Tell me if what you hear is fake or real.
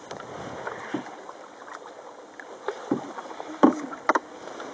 real